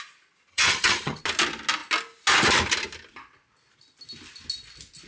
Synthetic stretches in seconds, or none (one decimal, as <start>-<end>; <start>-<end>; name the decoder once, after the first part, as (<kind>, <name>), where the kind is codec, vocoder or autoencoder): 0.5-1.2 (vocoder, HiFi-GAN)